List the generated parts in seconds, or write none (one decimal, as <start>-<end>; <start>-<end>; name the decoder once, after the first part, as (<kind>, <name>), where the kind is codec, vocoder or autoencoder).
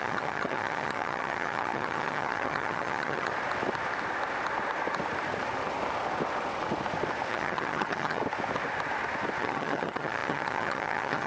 0.0-3.3 (vocoder, HiFi-GAN); 7.3-8.2; 9.4-11.3